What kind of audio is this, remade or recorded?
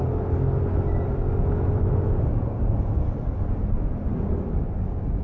recorded